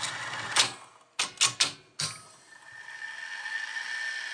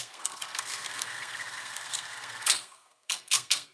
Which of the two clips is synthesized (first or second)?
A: second